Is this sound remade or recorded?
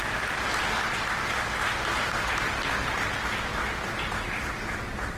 recorded